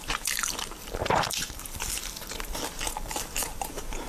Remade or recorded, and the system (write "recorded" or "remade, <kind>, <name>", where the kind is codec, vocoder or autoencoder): remade, vocoder, BigVGAN v2